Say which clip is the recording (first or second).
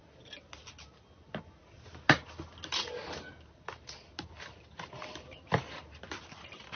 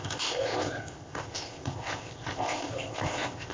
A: first